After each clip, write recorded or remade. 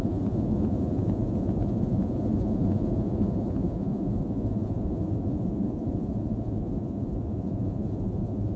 remade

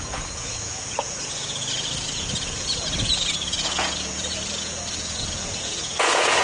remade